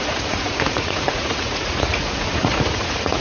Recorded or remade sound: remade